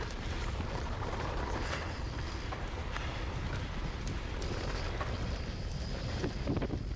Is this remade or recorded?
remade